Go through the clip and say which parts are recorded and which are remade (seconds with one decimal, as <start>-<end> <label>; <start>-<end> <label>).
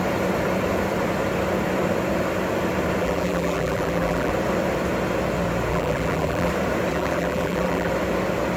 0.0-3.0 recorded; 3.0-4.3 remade; 4.3-5.7 recorded; 5.7-6.5 remade; 6.5-6.9 recorded; 6.9-7.9 remade; 7.9-8.6 recorded